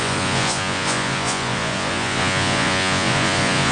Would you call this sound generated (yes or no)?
yes